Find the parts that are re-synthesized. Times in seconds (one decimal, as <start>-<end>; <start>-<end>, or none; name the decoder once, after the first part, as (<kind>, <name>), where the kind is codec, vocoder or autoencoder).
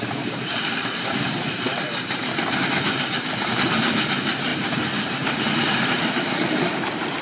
0.0-7.2 (vocoder, BigVGAN v2)